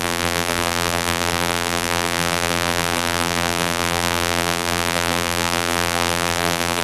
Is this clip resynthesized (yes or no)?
yes